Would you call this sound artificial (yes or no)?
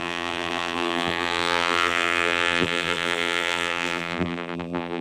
yes